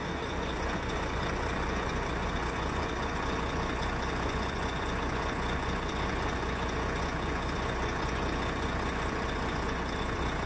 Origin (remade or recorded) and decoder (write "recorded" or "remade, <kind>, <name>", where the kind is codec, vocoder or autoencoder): remade, vocoder, Vocos